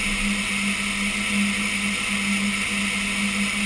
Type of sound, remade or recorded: recorded